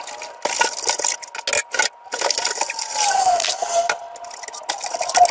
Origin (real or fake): real